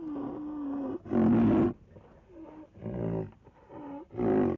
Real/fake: real